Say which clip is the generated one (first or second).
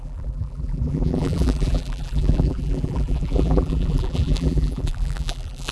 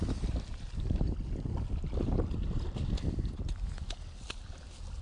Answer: first